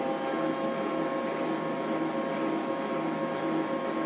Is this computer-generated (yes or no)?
no